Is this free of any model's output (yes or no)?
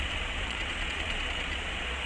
no